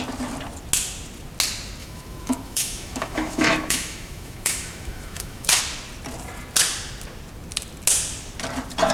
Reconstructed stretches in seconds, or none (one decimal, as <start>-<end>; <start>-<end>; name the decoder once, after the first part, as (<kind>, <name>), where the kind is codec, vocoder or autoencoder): 1.8-5.6 (autoencoder, DAC-VAE)